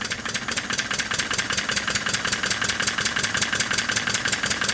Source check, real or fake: real